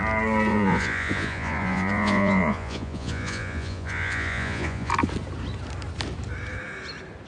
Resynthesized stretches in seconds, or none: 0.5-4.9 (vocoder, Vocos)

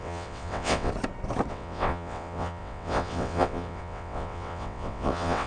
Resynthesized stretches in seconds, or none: 0.0-0.9 (vocoder, WaveNeXt); 1.5-5.5

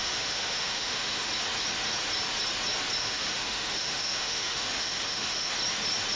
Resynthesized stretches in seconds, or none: 0.0-1.3 (autoencoder, DAC-VAE); 3.0-5.5

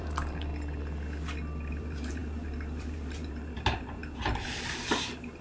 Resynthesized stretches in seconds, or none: 0.0-0.5 (vocoder, BigVGAN v2); 1.7-5.4

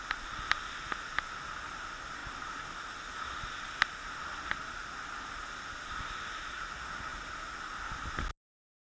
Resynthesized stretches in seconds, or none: none

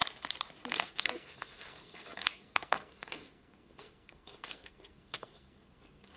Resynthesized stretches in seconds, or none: 0.7-6.2 (codec, SNAC)

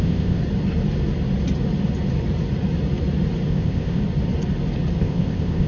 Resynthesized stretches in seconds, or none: 0.0-0.4 (codec, ZipCodec); 3.5-4.0; 5.0-5.7

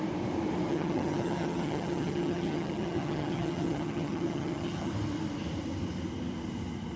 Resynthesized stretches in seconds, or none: 0.7-4.9 (vocoder, HiFi-GAN)